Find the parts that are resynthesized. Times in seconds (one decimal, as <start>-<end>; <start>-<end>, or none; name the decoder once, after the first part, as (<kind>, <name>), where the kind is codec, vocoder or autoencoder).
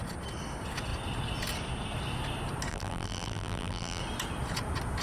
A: 2.7-4.0 (vocoder, BigVGAN v2)